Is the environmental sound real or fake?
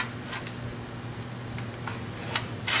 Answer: real